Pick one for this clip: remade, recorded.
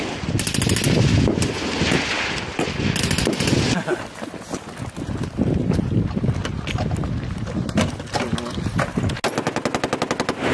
recorded